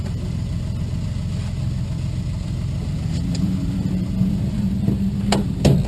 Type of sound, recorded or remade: recorded